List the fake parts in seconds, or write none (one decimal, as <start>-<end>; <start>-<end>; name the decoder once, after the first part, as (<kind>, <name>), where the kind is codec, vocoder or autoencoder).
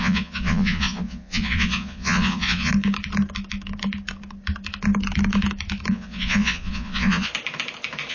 0.0-2.7 (vocoder, Vocos); 5.9-7.3